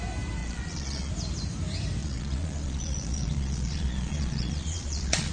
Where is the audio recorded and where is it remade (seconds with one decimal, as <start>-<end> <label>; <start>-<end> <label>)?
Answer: 0.0-0.4 recorded; 0.4-1.1 remade; 1.1-2.0 recorded; 2.0-5.3 remade